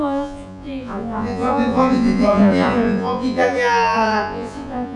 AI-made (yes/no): yes